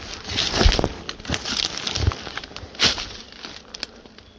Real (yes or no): yes